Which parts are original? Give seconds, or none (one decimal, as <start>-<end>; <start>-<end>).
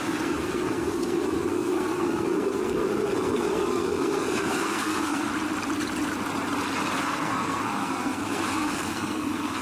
5.3-7.0